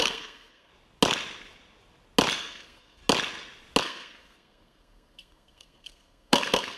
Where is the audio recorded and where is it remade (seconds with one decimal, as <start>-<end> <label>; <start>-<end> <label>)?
0.0-0.7 remade; 0.7-2.4 recorded; 2.4-3.0 remade; 3.0-3.8 recorded; 3.8-6.8 remade